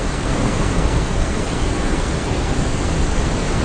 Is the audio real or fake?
fake